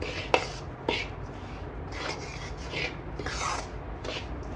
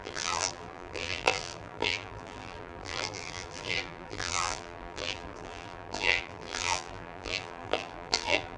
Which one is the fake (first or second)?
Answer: second